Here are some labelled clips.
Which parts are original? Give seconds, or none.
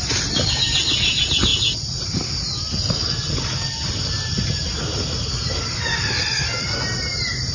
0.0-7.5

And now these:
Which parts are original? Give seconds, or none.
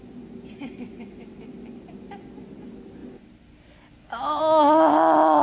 0.0-5.4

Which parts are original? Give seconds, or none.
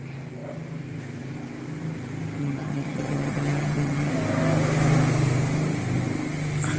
0.0-2.4; 4.1-6.8